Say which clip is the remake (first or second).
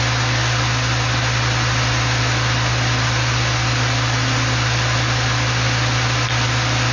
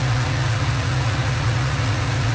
second